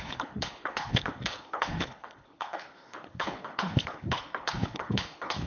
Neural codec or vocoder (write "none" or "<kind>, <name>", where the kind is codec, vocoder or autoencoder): codec, HILCodec